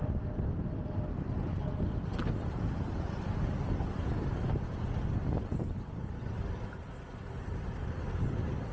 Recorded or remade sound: recorded